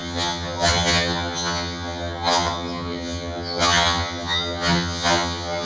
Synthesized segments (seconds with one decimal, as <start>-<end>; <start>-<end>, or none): 0.0-5.7